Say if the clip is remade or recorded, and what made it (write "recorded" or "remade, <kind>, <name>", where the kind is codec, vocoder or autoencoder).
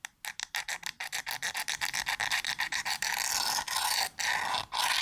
recorded